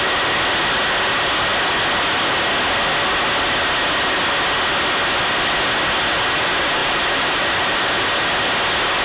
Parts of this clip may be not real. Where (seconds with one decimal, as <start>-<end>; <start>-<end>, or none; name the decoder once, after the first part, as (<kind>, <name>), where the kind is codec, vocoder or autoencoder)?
6.8-7.9 (vocoder, BigVGAN v2)